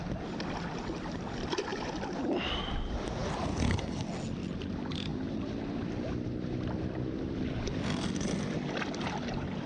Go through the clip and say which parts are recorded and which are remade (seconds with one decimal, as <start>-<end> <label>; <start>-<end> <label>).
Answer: 0.0-9.7 recorded